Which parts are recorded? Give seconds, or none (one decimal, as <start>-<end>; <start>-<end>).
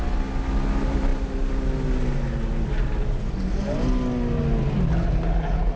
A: 0.0-5.8